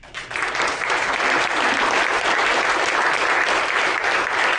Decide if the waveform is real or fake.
real